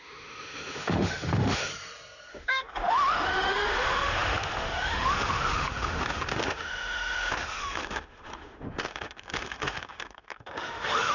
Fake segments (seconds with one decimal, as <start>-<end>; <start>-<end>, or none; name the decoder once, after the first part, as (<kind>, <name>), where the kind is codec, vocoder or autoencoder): 0.0-1.7 (autoencoder, DAC-VAE); 2.3-11.1